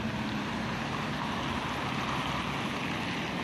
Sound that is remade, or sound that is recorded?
recorded